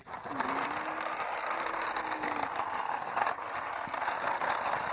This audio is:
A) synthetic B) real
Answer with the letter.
B